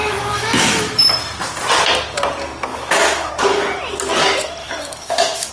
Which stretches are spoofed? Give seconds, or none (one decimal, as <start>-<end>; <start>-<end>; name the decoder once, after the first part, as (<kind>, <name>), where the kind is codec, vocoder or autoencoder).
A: 0.0-1.1 (autoencoder, DAC-VAE); 2.7-3.3; 4.6-5.5